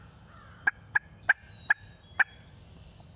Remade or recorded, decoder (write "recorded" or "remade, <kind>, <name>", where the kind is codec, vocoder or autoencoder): recorded